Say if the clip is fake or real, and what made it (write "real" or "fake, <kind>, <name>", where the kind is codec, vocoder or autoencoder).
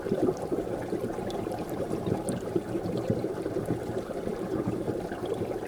fake, vocoder, BigVGAN v2